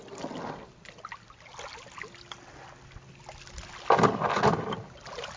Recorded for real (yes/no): yes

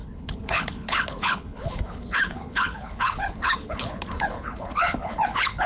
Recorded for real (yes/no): no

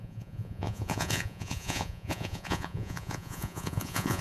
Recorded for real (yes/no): no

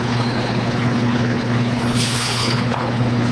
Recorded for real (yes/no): no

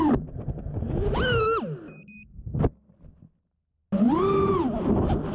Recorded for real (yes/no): yes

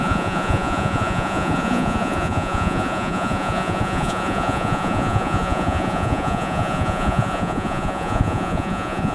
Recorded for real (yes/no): no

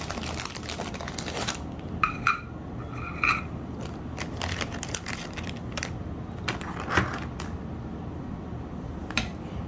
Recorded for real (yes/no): yes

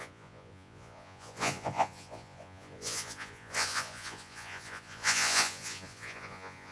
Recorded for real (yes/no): no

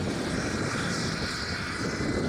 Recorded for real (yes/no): yes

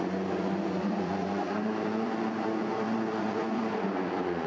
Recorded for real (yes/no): no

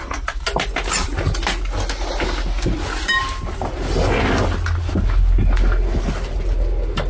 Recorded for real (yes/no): yes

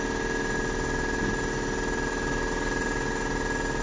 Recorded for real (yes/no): yes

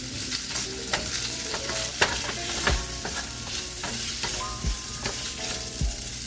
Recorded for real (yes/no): no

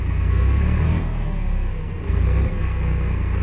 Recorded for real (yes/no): no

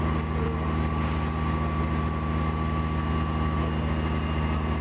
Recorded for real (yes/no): yes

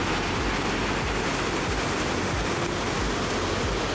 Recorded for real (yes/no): yes